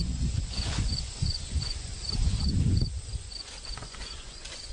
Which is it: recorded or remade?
remade